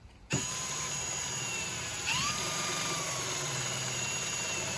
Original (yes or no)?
no